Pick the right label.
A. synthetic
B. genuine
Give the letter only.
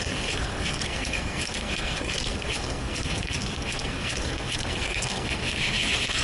A